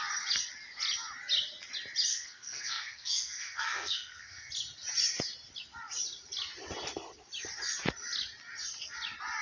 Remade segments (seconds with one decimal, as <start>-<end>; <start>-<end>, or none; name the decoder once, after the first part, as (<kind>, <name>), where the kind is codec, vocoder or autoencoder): 2.1-4.5 (codec, SNAC)